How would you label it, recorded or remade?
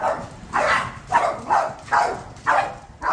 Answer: recorded